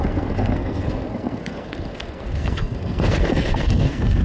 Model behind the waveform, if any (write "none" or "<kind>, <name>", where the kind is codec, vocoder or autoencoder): codec, SNAC